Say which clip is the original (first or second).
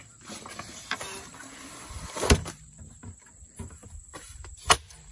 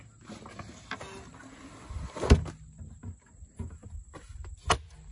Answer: second